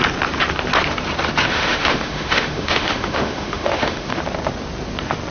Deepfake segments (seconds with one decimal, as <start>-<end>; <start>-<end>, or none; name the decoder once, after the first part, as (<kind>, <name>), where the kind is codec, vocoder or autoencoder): 1.5-4.2 (autoencoder, DAC-VAE)